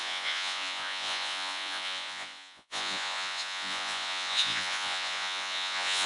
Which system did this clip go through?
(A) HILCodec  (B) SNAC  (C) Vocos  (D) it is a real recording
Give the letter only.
C